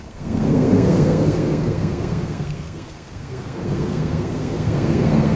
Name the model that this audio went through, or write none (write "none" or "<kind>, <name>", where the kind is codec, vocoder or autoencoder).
codec, SNAC